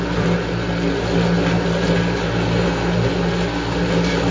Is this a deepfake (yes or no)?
no